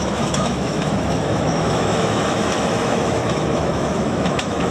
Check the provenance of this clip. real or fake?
fake